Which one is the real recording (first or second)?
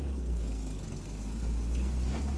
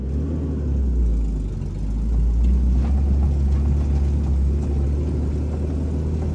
second